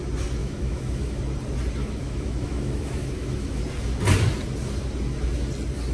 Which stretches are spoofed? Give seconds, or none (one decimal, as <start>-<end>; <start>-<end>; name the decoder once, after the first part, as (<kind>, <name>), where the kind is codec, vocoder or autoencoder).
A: 0.4-1.2 (autoencoder, DAC-VAE); 1.8-3.6